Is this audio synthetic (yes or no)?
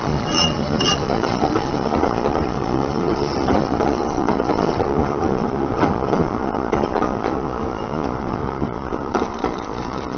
yes